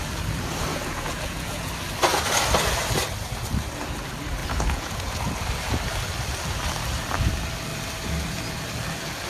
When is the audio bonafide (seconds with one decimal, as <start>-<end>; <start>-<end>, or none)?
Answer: 0.0-0.7; 1.7-4.4; 5.3-9.3